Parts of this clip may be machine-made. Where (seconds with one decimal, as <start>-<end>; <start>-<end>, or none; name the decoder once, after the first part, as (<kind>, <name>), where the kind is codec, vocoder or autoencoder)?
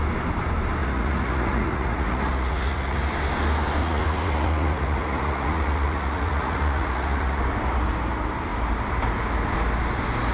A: 0.8-3.0 (vocoder, Vocos); 3.8-7.4